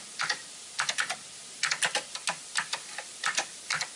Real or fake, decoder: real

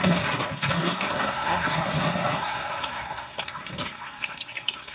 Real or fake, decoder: fake, codec, SNAC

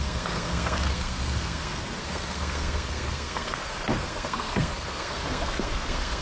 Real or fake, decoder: fake, codec, SNAC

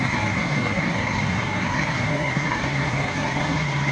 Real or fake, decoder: fake, codec, SNAC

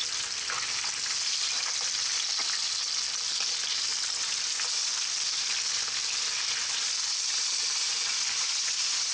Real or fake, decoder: real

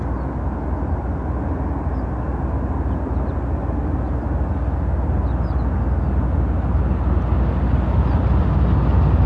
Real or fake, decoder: real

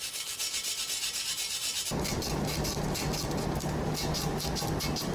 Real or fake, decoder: real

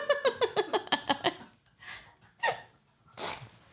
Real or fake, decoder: real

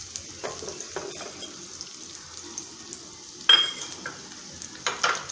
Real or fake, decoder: real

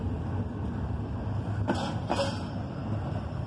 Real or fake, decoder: real